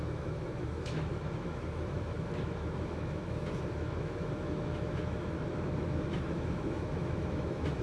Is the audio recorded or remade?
remade